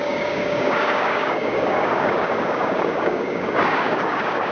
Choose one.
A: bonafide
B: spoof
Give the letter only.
B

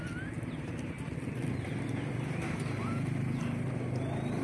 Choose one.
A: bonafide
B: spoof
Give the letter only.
A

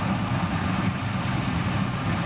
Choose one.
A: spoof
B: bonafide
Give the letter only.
B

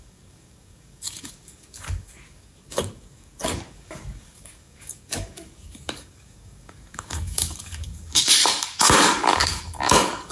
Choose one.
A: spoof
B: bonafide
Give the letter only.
A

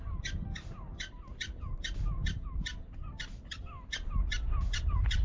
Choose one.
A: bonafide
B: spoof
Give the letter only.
A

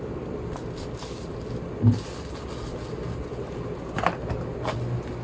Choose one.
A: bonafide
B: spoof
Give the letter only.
A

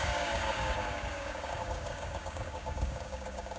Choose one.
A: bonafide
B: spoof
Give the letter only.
B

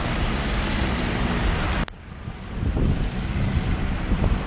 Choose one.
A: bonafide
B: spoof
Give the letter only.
A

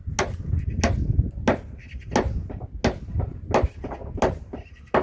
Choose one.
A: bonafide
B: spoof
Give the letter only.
A